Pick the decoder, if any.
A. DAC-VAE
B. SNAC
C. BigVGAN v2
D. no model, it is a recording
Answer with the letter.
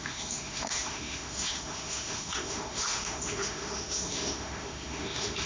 A